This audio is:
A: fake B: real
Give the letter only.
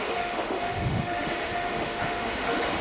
A